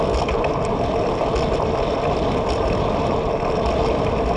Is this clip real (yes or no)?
yes